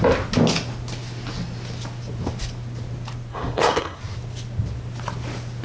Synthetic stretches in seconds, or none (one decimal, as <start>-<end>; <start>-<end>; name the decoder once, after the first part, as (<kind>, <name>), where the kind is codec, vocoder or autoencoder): 3.3-4.0 (codec, SNAC)